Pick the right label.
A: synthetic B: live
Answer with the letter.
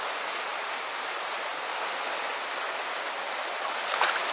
B